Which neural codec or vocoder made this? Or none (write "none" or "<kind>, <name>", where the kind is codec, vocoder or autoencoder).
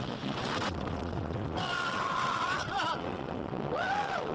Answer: vocoder, WaveNeXt